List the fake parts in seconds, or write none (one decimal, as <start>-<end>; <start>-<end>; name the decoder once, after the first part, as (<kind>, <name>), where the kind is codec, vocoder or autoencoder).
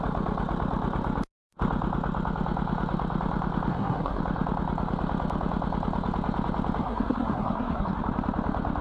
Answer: 3.7-4.2 (codec, SNAC); 6.8-8.0